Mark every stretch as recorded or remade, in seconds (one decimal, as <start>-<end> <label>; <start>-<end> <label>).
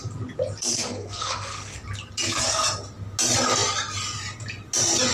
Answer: 0.0-0.7 recorded; 0.7-1.8 remade; 1.8-5.1 recorded